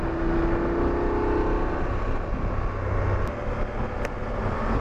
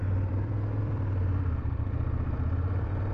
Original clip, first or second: first